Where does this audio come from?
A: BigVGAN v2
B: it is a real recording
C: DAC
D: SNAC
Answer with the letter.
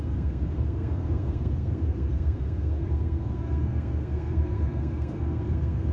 D